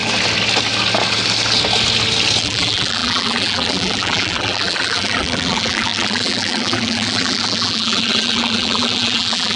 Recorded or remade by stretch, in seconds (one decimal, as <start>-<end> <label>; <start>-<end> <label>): 0.0-2.4 recorded; 2.4-9.6 remade